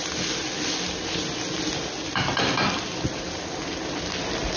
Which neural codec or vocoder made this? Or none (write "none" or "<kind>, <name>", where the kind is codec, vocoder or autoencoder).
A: none